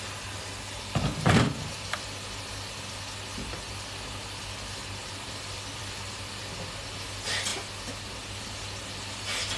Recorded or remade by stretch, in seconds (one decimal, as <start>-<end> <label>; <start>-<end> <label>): 0.0-5.0 recorded; 5.0-6.6 remade; 6.6-9.6 recorded